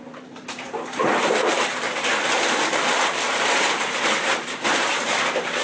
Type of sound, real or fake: fake